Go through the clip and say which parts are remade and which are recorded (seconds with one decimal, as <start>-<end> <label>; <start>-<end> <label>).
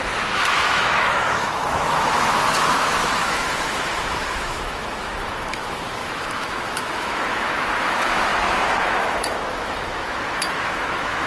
0.0-8.3 remade; 8.3-8.8 recorded; 8.8-11.3 remade